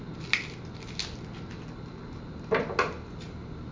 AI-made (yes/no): no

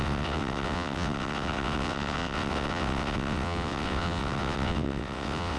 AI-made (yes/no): yes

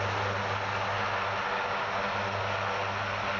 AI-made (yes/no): no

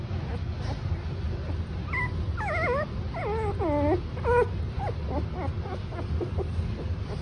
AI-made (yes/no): no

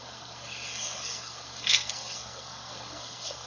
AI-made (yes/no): yes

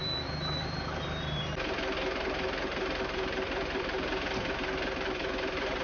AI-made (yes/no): yes